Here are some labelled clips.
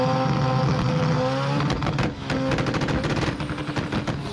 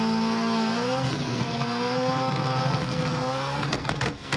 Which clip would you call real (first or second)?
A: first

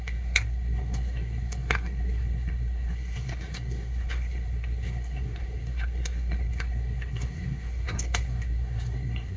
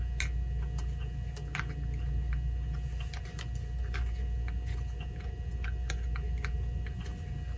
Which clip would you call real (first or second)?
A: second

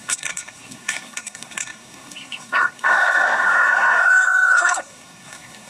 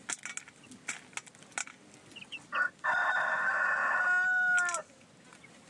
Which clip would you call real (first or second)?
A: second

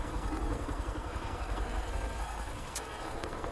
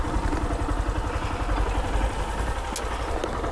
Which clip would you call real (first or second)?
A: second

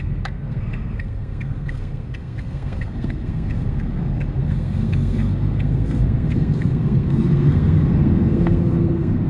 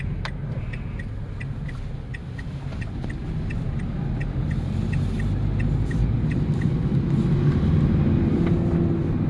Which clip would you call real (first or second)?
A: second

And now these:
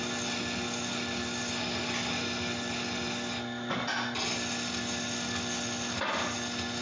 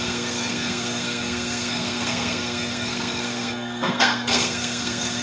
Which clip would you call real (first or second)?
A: first